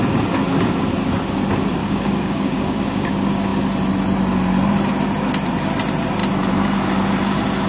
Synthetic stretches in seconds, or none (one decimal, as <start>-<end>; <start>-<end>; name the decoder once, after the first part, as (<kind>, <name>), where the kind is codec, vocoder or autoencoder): 1.8-3.1 (codec, DAC)